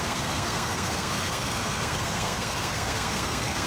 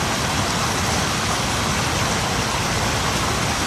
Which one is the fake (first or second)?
first